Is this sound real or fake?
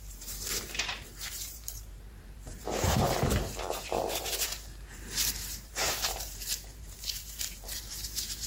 fake